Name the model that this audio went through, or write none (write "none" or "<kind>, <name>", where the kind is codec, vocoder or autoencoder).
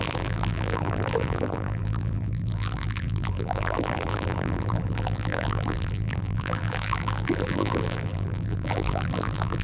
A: vocoder, BigVGAN v2